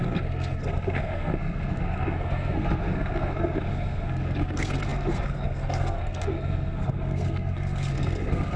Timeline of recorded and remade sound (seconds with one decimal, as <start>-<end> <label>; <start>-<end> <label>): 0.0-8.6 remade